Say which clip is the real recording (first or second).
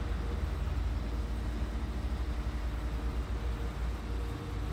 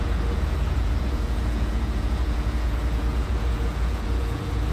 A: first